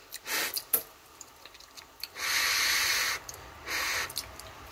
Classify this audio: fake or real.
real